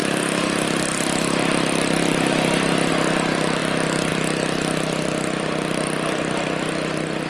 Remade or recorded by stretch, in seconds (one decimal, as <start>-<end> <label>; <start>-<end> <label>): 0.0-2.9 remade; 2.9-7.3 recorded

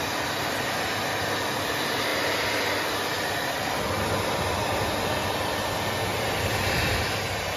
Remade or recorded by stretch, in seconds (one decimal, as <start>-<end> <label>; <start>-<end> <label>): 0.0-6.1 recorded; 6.1-7.6 remade

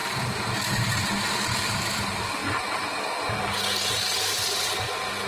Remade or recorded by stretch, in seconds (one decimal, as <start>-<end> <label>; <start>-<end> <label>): 0.0-1.0 recorded; 1.0-2.4 remade; 2.4-4.2 recorded; 4.2-5.3 remade

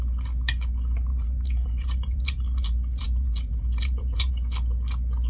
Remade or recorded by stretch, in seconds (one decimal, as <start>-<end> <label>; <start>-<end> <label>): 0.0-1.1 recorded; 1.1-4.3 remade; 4.3-5.3 recorded

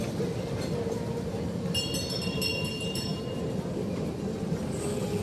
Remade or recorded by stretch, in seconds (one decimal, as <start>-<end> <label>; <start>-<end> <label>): 0.0-2.5 recorded; 2.5-4.2 remade; 4.2-5.2 recorded

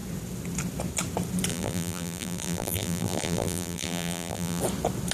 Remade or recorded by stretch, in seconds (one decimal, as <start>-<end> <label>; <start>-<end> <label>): 0.0-1.5 recorded; 1.5-4.6 remade; 4.6-5.1 recorded

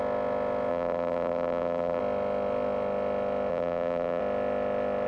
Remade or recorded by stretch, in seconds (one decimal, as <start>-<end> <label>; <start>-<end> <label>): 0.0-0.7 recorded; 0.7-2.0 remade; 2.0-3.5 recorded; 3.5-4.2 remade; 4.2-5.1 recorded

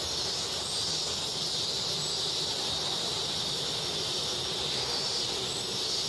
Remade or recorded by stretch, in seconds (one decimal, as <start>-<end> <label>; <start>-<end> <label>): 0.0-6.1 remade